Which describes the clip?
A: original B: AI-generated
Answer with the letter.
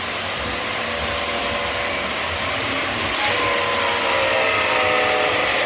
A